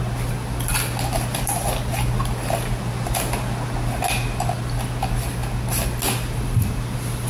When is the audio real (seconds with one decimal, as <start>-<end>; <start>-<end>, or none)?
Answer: 0.0-7.3